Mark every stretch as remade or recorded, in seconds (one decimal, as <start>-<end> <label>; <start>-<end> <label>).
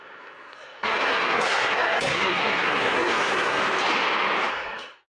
0.0-3.6 remade; 3.6-4.5 recorded; 4.5-5.2 remade